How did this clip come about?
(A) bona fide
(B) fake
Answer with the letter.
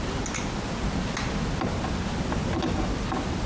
A